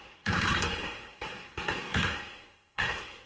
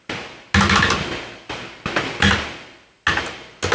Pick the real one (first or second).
second